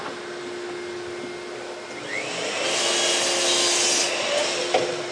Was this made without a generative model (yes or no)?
yes